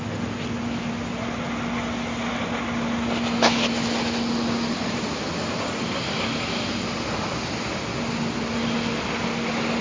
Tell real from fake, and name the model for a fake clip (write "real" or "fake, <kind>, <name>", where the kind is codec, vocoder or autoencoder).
real